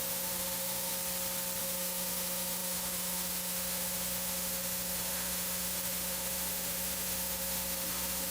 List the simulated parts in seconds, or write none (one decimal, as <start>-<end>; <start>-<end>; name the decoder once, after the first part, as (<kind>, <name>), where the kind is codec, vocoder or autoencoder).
0.0-0.9 (autoencoder, DAC-VAE); 1.6-8.3